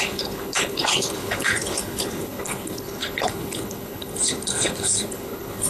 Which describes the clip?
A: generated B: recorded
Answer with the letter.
A